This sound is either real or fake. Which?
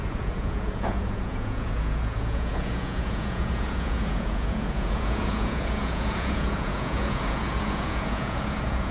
fake